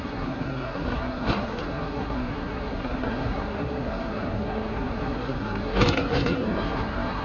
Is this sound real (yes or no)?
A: no